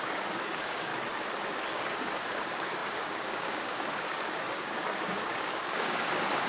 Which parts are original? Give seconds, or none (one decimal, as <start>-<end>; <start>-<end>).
0.9-1.7